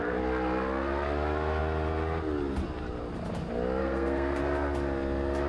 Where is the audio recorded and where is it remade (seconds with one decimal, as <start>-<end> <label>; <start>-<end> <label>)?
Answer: 0.0-3.8 recorded; 3.8-4.4 remade; 4.4-5.5 recorded